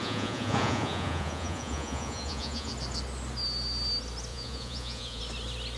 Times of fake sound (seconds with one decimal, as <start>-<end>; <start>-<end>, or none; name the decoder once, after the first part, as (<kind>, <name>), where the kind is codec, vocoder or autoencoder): 0.0-2.7 (vocoder, Vocos); 4.3-5.2